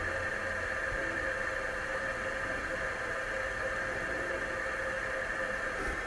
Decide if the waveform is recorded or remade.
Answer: recorded